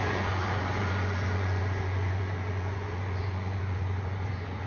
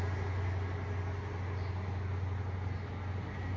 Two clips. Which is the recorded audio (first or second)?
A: second